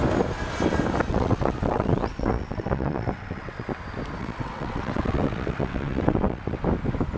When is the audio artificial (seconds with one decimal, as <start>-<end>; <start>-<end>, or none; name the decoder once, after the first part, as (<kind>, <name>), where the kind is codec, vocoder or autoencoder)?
1.1-3.7 (vocoder, WaveNeXt); 4.2-6.6